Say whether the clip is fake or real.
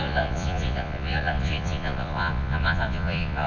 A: fake